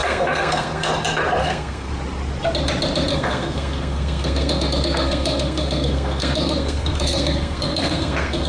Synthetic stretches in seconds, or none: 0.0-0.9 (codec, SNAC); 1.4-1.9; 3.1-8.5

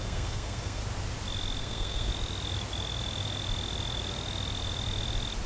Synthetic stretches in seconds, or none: 0.0-0.8 (codec, SNAC); 1.6-2.1

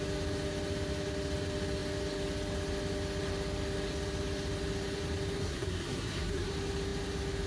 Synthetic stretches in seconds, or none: 5.4-6.5 (codec, SNAC)

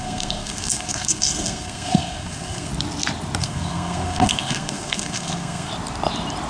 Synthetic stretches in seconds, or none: 0.0-2.7 (codec, SNAC); 3.4-5.7

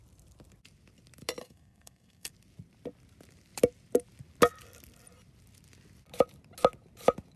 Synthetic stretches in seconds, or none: 1.4-2.3 (codec, SNAC)

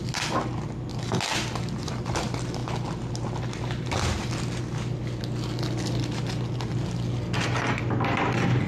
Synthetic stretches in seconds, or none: none

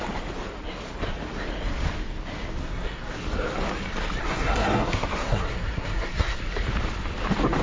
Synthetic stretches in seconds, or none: 2.6-3.2 (codec, SNAC); 4.2-6.4